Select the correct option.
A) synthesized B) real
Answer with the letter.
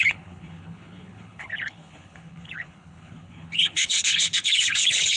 A